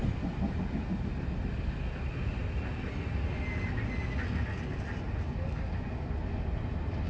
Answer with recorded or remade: recorded